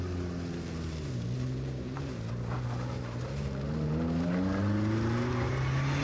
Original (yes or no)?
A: yes